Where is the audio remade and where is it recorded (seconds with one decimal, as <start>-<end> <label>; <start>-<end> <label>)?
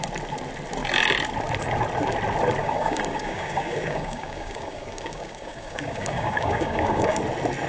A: 0.0-2.6 recorded; 2.6-7.2 remade; 7.2-7.7 recorded